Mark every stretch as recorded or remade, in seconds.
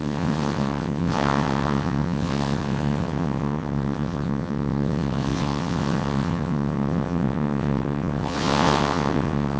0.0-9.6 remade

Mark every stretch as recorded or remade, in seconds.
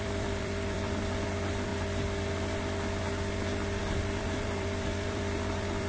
0.0-1.7 remade; 1.7-3.8 recorded; 3.8-5.9 remade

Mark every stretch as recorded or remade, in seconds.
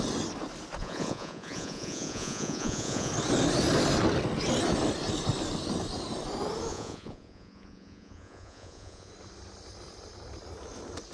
0.0-0.8 recorded; 0.8-3.1 remade; 3.1-6.7 recorded; 6.7-9.1 remade; 9.1-11.1 recorded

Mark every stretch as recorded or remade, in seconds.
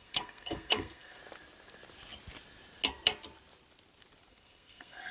0.0-1.2 remade; 1.2-4.3 recorded; 4.3-5.1 remade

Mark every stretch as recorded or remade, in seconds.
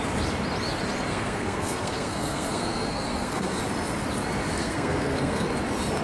0.0-1.1 recorded; 1.1-3.6 remade; 3.6-4.6 recorded; 4.6-5.5 remade; 5.5-6.0 recorded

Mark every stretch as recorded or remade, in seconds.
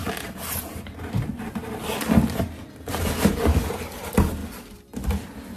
0.0-5.6 recorded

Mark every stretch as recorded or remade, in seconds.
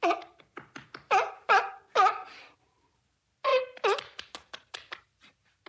0.0-5.7 recorded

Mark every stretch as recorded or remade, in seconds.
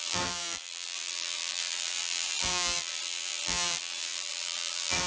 0.0-5.1 remade